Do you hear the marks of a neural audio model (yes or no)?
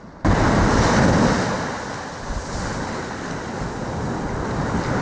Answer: no